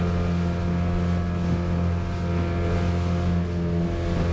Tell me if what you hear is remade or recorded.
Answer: recorded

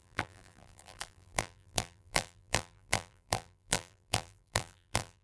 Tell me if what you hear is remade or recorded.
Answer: remade